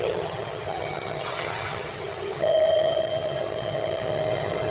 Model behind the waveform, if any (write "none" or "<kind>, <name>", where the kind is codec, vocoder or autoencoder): vocoder, HiFi-GAN